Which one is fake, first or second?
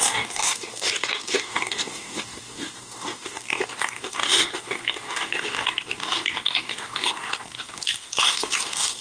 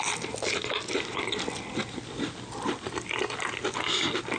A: first